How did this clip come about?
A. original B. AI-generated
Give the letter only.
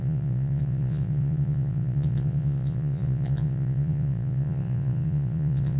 B